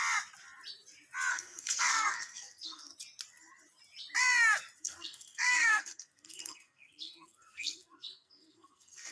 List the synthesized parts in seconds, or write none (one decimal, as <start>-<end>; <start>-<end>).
1.3-2.9; 4.8-9.1